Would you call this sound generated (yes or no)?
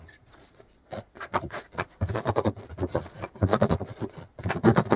yes